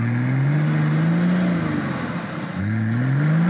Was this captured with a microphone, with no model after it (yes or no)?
yes